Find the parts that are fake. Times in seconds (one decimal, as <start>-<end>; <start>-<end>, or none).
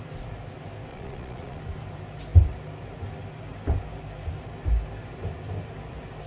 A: 0.9-1.6